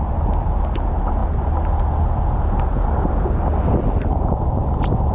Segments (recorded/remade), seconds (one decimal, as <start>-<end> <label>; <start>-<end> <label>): 0.0-5.1 recorded